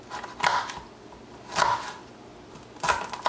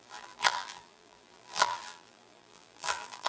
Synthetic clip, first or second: second